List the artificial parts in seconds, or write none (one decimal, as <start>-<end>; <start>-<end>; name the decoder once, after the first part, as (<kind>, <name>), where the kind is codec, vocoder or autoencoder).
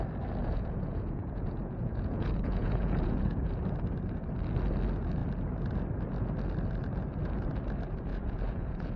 0.4-3.5 (vocoder, Vocos); 8.1-9.0